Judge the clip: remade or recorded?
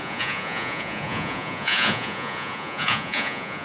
remade